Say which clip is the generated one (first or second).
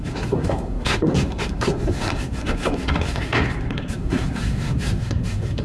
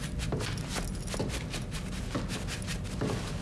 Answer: first